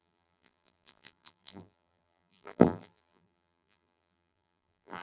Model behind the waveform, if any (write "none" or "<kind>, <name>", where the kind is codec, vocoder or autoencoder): vocoder, BigVGAN v2